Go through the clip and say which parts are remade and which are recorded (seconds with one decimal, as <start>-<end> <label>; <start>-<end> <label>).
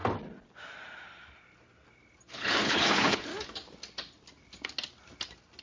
0.0-2.3 recorded; 2.3-3.3 remade; 3.3-5.6 recorded